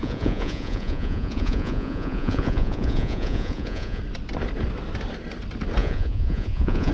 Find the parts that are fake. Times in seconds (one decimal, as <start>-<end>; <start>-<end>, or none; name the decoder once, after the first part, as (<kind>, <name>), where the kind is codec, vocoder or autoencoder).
0.0-4.0 (vocoder, Vocos); 5.8-6.9